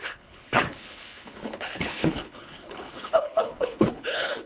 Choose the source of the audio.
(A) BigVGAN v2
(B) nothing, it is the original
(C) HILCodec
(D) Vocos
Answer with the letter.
C